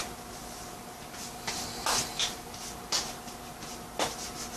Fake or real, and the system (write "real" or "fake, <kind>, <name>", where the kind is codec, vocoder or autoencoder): real